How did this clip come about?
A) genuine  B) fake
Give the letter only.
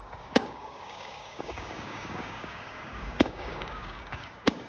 B